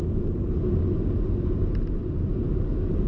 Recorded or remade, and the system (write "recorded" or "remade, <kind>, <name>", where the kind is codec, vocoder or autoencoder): recorded